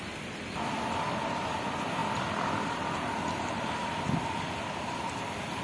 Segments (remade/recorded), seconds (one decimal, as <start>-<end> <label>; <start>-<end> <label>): 0.0-5.6 recorded